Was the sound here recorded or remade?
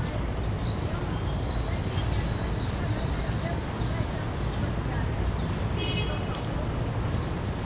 recorded